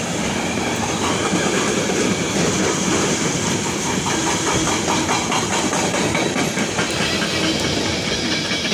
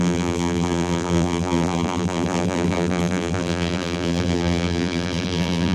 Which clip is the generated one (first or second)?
second